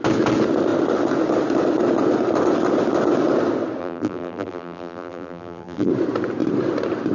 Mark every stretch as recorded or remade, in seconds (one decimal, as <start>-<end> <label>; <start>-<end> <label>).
0.0-3.8 recorded; 3.8-5.9 remade; 5.9-7.1 recorded